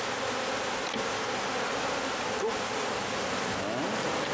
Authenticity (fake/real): real